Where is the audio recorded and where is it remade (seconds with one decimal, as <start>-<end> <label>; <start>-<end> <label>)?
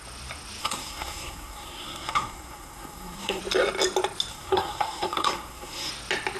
0.0-0.6 recorded; 0.6-3.4 remade; 3.4-4.3 recorded; 4.3-5.9 remade; 5.9-6.4 recorded